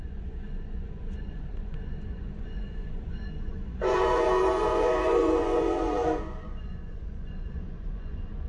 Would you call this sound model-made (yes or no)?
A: yes